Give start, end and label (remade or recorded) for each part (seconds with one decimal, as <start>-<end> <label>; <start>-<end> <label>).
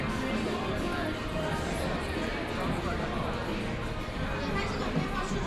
0.0-5.5 recorded